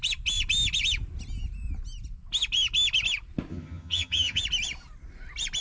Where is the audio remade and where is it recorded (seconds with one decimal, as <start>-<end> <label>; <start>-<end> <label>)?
0.0-3.5 recorded; 3.5-4.4 remade; 4.4-5.6 recorded